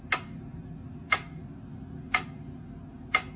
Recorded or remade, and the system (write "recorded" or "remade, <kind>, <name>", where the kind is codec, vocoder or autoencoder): recorded